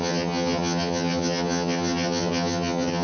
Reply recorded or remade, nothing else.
remade